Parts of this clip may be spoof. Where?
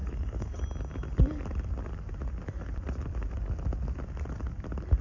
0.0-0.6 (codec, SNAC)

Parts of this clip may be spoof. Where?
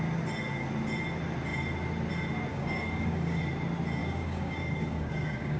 2.5-3.4 (codec, DAC); 4.0-5.6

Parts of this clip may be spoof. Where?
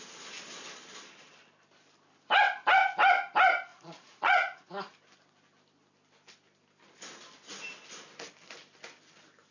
3.7-4.9 (vocoder, Vocos)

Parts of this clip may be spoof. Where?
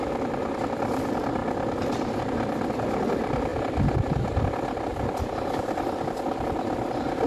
0.0-1.4 (vocoder, BigVGAN v2); 2.2-7.3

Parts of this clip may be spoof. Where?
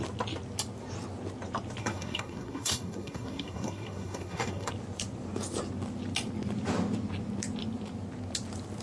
1.8-4.7 (codec, SNAC)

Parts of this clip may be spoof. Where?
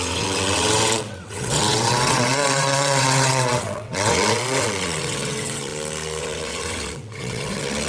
0.0-5.7 (vocoder, WaveNeXt); 6.2-7.9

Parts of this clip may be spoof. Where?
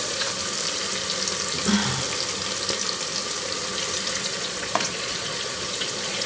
0.0-0.4 (vocoder, Vocos); 4.2-6.3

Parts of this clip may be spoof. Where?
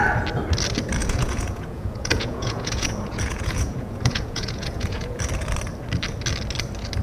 1.0-5.2 (vocoder, Vocos)